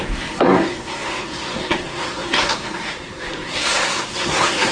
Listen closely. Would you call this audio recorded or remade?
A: remade